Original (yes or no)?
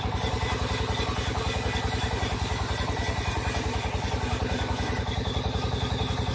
yes